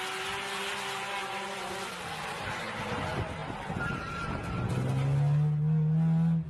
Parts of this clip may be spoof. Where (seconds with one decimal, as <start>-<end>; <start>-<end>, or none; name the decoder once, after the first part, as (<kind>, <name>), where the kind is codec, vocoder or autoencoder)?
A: none